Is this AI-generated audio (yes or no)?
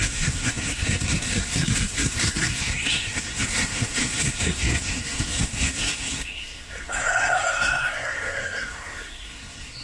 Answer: yes